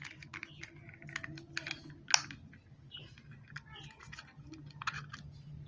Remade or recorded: recorded